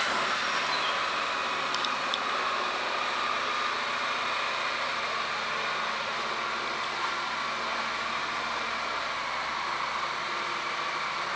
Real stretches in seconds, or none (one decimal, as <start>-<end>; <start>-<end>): 0.0-11.4